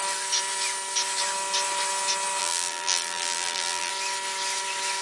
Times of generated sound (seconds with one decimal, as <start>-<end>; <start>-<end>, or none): 2.4-3.9